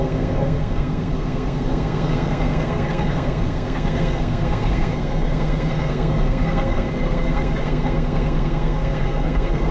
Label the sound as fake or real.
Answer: fake